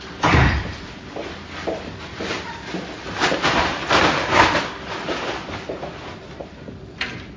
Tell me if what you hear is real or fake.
real